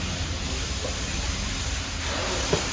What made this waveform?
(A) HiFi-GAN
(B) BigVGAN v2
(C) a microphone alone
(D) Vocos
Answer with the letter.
C